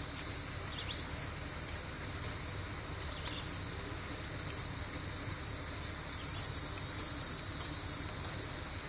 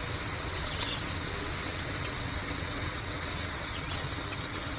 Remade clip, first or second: second